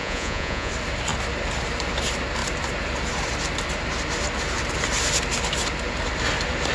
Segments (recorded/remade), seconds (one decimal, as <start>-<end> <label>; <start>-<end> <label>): 0.0-0.7 remade; 0.7-6.7 recorded